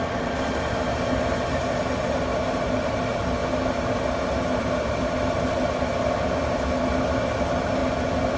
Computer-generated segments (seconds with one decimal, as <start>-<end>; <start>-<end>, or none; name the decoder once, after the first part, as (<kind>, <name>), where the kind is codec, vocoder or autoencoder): none